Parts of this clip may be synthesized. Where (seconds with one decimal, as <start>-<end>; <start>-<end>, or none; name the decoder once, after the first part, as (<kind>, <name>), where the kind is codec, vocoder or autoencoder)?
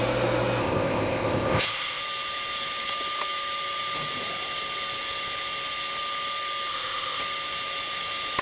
0.6-2.0 (codec, ZipCodec); 6.7-7.2